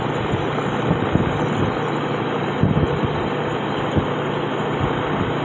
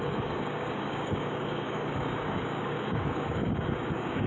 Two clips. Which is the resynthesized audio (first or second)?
second